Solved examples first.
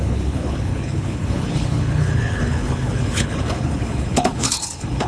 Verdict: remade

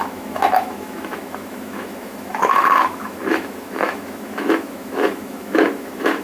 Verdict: remade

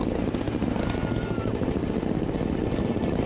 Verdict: recorded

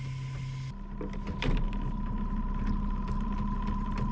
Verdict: recorded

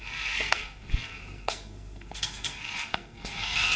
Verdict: remade